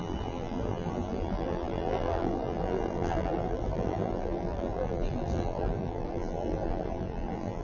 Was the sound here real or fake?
fake